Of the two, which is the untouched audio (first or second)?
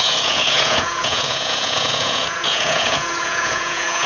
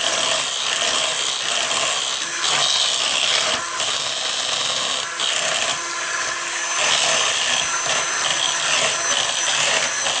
second